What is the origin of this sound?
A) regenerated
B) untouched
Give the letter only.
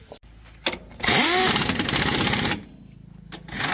B